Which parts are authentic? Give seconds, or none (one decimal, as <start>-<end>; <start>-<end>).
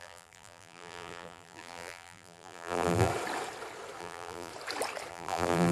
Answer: 3.1-4.0; 4.5-5.1